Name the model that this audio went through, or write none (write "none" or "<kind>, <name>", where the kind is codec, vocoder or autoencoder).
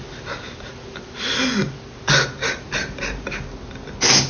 none